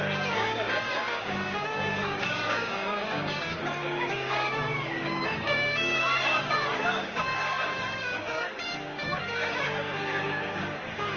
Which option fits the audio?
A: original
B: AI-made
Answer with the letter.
B